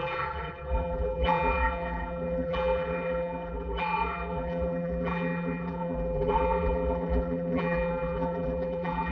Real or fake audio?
fake